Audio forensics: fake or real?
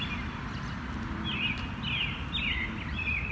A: real